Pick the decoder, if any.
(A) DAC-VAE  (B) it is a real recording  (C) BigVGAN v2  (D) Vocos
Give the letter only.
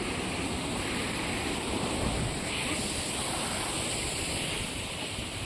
B